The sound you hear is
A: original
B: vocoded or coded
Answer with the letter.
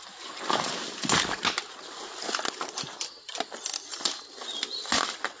A